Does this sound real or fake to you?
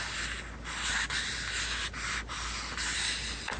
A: real